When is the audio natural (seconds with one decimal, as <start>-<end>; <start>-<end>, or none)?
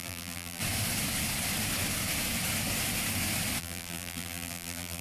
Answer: 0.6-3.6